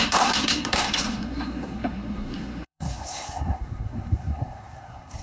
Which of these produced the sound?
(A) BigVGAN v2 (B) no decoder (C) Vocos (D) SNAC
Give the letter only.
D